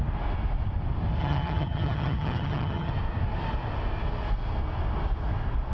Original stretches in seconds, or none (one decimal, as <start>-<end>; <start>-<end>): 0.0-1.2; 2.9-5.7